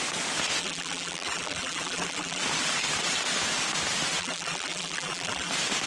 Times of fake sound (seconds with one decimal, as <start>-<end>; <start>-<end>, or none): 0.6-2.4; 4.2-5.5